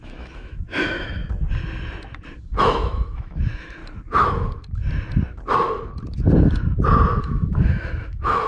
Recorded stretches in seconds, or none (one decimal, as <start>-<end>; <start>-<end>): 1.2-2.6; 3.8-7.2